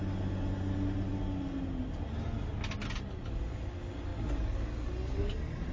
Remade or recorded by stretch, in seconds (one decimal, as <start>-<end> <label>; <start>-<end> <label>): 0.0-5.7 recorded